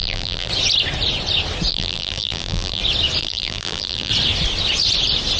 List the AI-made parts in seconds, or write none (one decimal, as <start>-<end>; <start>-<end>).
0.0-0.5; 1.7-2.8; 3.2-4.1